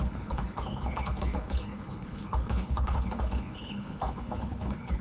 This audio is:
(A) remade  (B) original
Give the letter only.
A